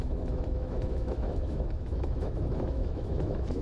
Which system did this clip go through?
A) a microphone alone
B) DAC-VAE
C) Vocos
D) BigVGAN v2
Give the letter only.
B